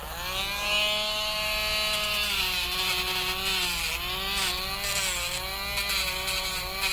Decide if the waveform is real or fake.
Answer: real